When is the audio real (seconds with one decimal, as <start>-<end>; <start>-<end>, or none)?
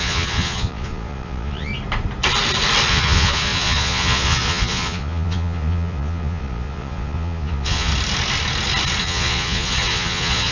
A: 1.7-2.9; 7.9-9.0